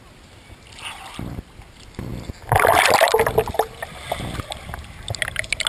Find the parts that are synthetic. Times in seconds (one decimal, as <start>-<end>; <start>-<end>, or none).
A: none